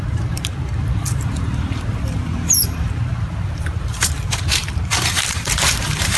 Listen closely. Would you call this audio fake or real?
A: fake